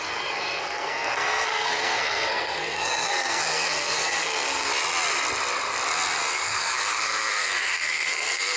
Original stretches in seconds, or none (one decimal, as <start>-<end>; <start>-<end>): 4.7-6.4